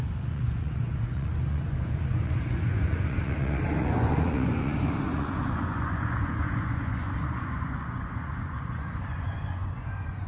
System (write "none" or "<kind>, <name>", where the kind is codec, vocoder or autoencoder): vocoder, Vocos